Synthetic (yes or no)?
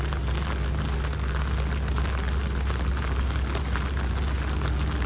no